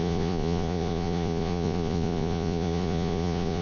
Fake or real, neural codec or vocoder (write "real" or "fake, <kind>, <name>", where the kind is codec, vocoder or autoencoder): fake, vocoder, Vocos